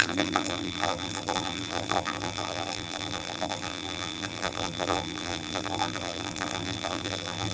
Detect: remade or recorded remade